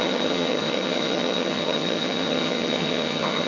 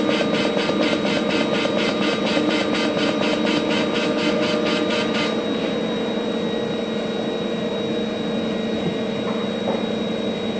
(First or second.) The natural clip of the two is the second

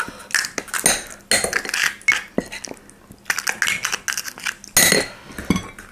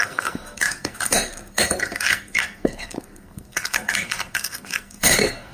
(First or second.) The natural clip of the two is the first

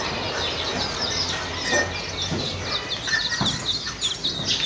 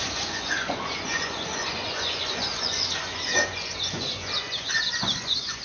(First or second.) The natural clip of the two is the first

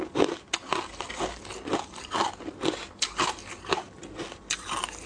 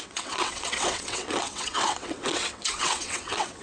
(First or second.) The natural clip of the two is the first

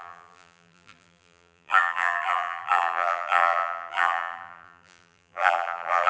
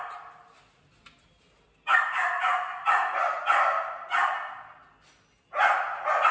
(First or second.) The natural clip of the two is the second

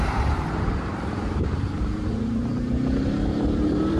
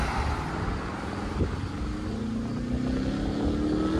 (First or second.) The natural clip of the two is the second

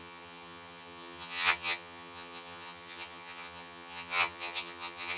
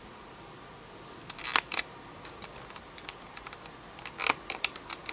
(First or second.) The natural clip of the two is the second